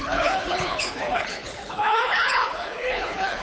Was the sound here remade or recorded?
remade